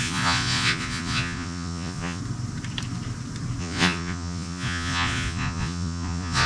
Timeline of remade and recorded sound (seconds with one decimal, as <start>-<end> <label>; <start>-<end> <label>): 0.0-2.2 remade; 2.2-3.6 recorded; 3.6-6.5 remade